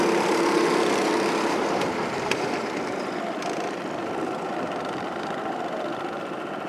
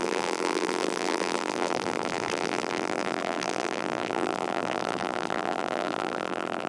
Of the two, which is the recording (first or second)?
first